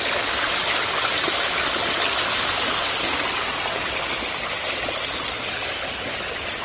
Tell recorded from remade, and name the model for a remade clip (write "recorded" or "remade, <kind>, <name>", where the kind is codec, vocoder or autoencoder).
recorded